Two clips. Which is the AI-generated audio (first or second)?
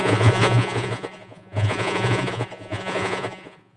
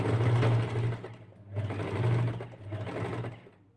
first